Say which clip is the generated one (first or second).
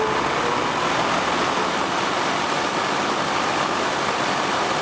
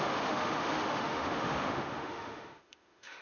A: second